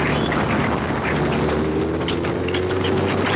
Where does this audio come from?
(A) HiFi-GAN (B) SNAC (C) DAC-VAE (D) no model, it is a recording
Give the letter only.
D